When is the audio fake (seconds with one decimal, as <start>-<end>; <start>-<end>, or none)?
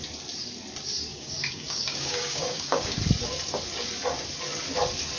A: 1.1-3.0